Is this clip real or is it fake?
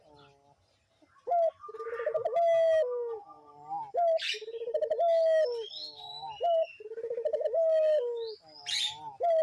real